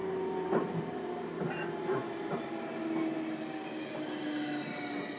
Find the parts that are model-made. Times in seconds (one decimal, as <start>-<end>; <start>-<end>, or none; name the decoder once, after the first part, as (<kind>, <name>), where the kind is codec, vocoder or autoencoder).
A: none